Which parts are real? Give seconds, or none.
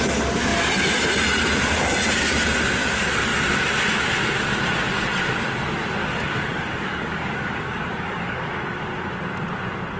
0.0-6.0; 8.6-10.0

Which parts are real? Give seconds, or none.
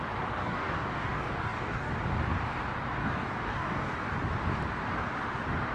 0.0-0.4; 1.9-3.0; 3.9-5.7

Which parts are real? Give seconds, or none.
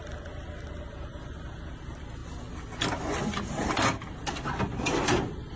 0.0-5.6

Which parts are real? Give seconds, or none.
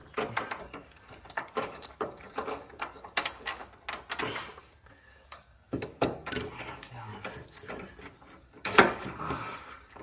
0.0-0.6; 3.6-4.6; 7.1-8.4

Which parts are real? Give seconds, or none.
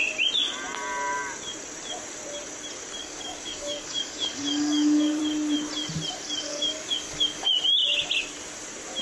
0.0-3.0; 5.2-6.5; 7.5-9.0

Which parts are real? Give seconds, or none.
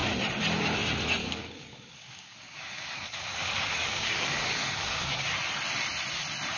0.0-1.2; 5.2-6.6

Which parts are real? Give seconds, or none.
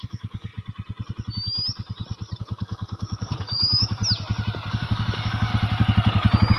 0.5-2.4; 4.0-4.7; 5.5-6.6